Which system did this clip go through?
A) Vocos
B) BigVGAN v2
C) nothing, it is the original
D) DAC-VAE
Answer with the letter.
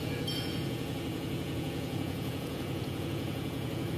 A